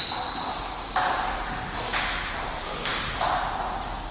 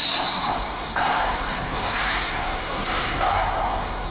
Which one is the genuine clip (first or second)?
first